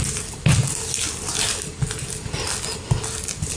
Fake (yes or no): no